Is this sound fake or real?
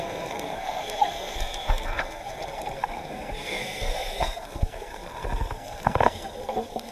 fake